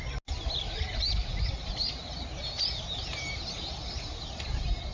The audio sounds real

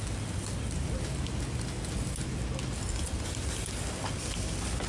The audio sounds real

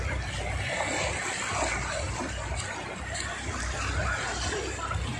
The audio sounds real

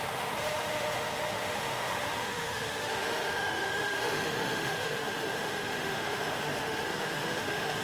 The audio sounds fake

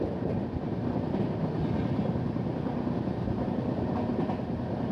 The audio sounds real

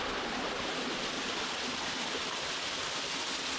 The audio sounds real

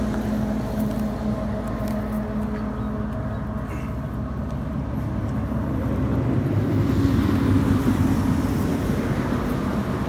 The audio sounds real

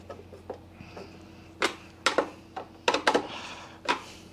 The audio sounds real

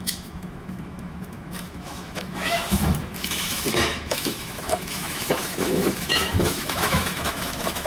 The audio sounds fake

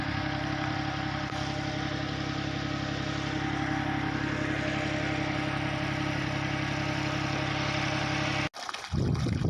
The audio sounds real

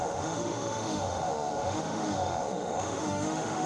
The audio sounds fake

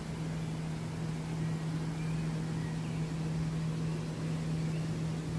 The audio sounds real